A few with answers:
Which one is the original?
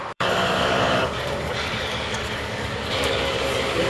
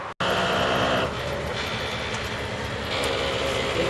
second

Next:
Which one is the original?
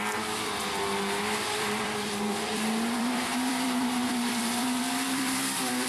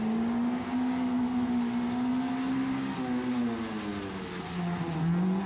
second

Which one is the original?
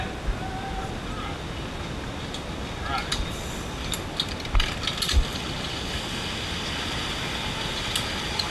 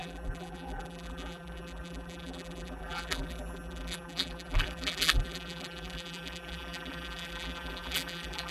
first